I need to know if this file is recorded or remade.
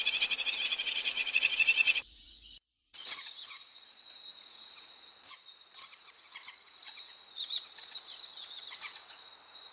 remade